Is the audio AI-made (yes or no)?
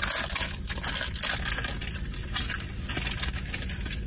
no